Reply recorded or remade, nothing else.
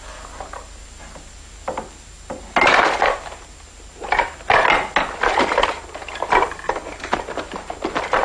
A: recorded